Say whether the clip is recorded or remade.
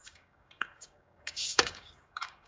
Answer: remade